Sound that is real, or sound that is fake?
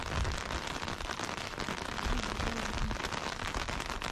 real